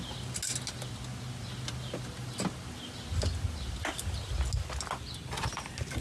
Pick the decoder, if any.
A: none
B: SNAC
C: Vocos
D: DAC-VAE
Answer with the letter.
A